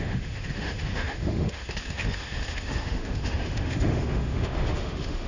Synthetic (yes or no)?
yes